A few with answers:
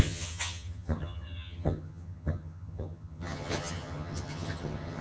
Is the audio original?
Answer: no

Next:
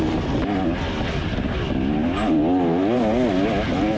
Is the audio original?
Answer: yes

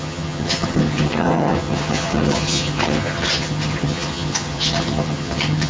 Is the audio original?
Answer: no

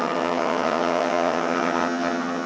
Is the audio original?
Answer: no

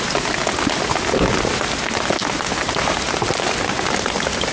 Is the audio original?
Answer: yes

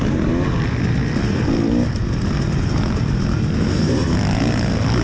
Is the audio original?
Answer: yes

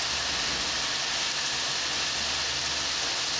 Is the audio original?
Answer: yes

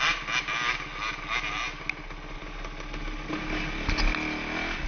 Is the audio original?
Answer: yes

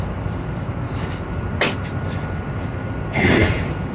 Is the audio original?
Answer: yes